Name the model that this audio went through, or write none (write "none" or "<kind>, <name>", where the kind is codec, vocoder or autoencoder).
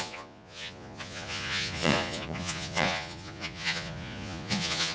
vocoder, Vocos